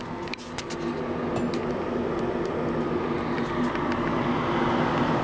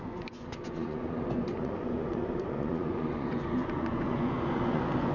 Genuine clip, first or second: first